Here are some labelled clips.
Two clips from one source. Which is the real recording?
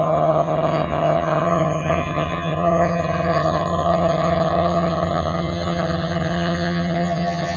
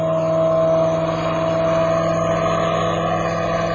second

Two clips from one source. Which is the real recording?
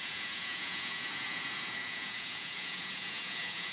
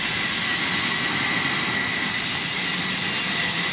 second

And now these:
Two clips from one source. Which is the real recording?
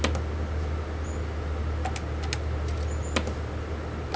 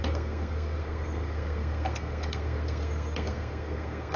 first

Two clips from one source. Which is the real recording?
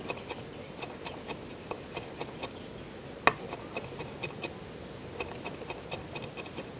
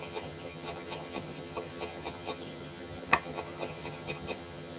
first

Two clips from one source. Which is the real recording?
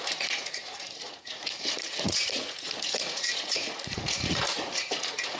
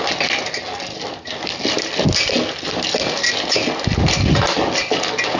second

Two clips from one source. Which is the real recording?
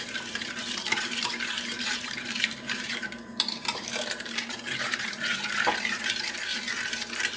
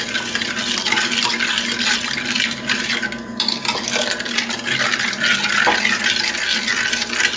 second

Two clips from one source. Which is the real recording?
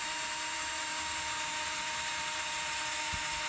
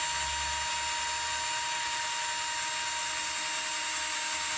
second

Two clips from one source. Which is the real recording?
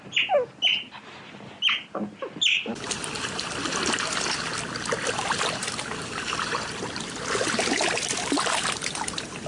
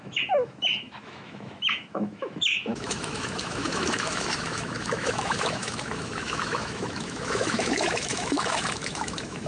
first